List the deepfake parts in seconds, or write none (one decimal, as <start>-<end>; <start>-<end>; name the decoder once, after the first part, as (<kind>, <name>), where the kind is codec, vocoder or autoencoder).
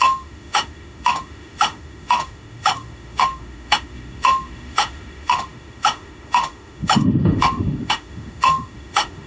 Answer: 0.0-9.3 (autoencoder, DAC-VAE)